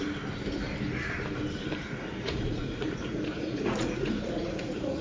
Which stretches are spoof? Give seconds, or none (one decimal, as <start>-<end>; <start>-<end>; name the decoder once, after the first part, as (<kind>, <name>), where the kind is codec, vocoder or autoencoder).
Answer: 1.8-5.0 (vocoder, Vocos)